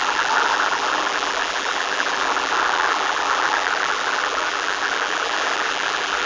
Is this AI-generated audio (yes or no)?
yes